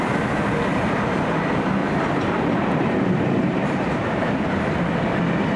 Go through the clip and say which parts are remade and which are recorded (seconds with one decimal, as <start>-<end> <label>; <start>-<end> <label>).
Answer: 0.0-0.7 recorded; 0.7-1.3 remade; 1.3-1.8 recorded; 1.8-4.7 remade; 4.7-5.6 recorded